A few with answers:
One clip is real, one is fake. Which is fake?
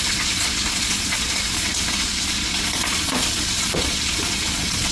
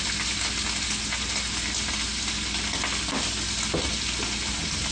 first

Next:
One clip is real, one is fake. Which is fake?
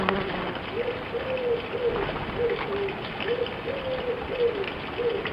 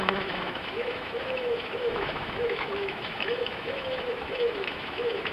second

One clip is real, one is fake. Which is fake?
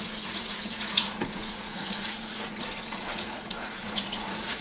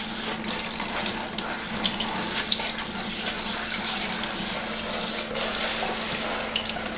first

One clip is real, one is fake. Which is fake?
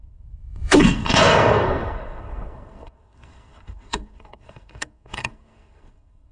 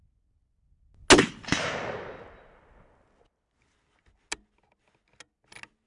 first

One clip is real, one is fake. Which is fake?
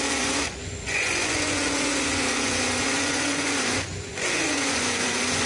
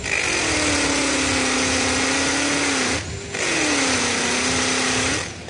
first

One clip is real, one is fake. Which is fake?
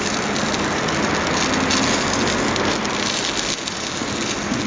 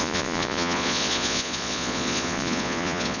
second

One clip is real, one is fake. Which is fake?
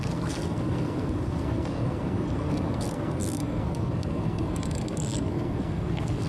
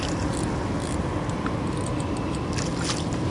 first